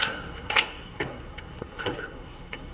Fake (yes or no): yes